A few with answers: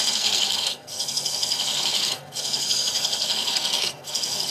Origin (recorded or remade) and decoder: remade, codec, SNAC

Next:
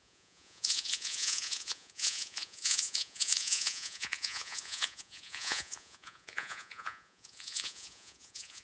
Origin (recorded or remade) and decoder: remade, vocoder, Vocos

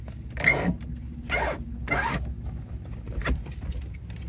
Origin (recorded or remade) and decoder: recorded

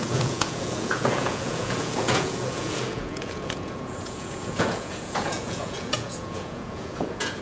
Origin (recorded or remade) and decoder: remade, vocoder, Vocos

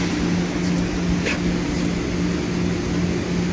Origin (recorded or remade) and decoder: recorded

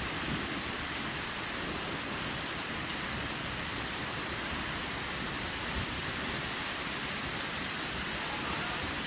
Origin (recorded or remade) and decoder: recorded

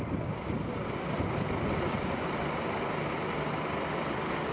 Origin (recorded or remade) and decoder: recorded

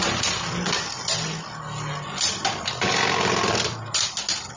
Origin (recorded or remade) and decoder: recorded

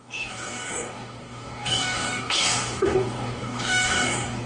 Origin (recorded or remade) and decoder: remade, codec, DAC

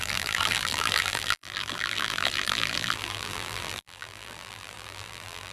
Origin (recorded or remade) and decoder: remade, vocoder, BigVGAN v2